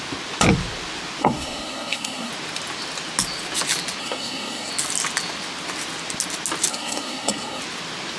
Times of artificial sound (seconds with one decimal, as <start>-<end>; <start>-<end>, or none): 1.2-2.3; 4.0-4.7; 6.7-7.6